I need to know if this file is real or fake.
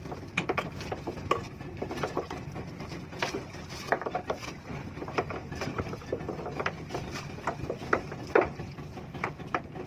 real